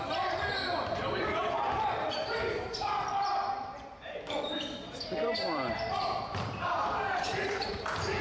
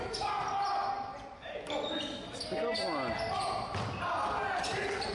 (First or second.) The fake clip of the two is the first